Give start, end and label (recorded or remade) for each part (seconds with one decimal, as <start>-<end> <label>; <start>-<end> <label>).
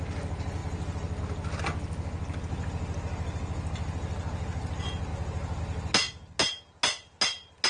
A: 0.0-7.7 recorded